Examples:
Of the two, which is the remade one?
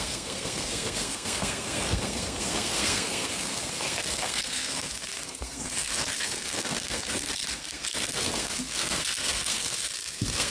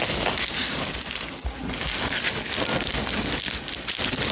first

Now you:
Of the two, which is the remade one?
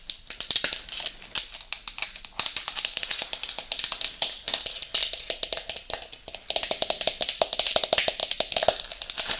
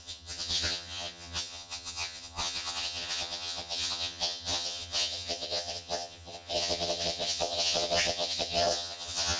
second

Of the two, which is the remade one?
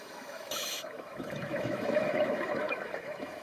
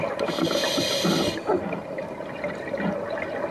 first